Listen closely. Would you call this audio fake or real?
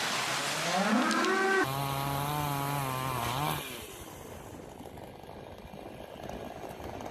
real